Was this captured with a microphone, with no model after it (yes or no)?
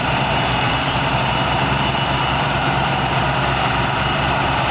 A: no